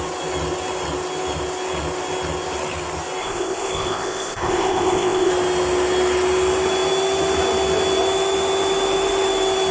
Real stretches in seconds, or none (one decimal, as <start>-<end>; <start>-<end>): 0.0-3.2; 5.3-9.7